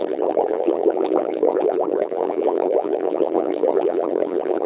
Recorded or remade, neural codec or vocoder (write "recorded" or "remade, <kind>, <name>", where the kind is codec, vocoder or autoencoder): remade, vocoder, BigVGAN v2